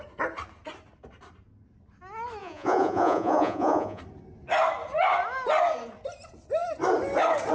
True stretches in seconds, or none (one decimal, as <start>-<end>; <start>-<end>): 0.0-2.4; 4.0-7.5